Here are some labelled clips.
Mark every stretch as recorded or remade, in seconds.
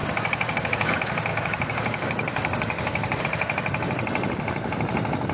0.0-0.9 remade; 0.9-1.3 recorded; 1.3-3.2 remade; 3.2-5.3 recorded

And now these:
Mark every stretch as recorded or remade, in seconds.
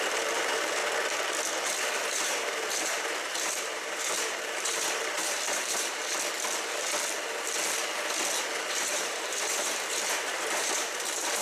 0.0-0.8 remade; 0.8-2.1 recorded; 2.1-6.0 remade; 6.0-8.6 recorded; 8.6-11.4 remade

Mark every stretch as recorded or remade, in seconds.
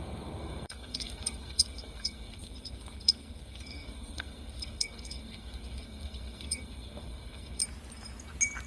0.0-7.6 remade; 7.6-8.7 recorded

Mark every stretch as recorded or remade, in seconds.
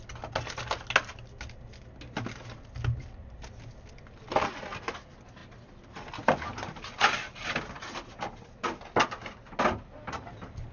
0.0-10.7 recorded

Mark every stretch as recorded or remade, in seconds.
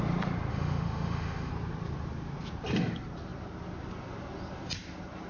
0.0-0.5 recorded; 0.5-1.5 remade; 1.5-5.3 recorded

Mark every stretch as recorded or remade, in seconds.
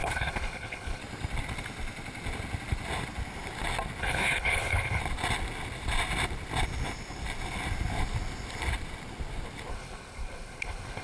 0.0-1.0 remade; 1.0-4.0 recorded; 4.0-5.0 remade; 5.0-9.7 recorded; 9.7-11.0 remade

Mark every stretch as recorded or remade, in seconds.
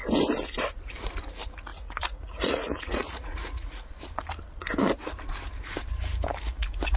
0.0-1.7 recorded; 1.7-3.9 remade; 3.9-7.0 recorded